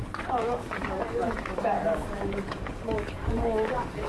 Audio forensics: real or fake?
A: fake